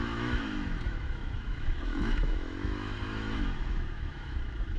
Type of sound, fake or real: fake